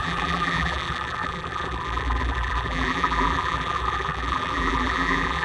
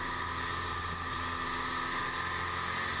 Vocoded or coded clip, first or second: first